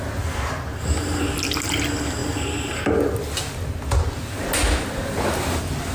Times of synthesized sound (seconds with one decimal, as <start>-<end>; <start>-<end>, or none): none

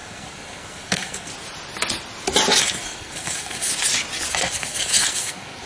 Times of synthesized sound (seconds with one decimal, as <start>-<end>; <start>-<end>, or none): 0.0-1.3; 2.6-3.7; 4.3-5.7